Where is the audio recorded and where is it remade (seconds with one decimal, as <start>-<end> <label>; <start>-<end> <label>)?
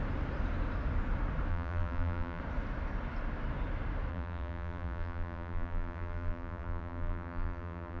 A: 0.0-1.5 recorded; 1.5-2.4 remade; 2.4-4.1 recorded; 4.1-8.0 remade